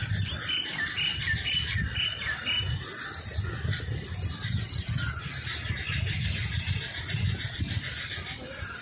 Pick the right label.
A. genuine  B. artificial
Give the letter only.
A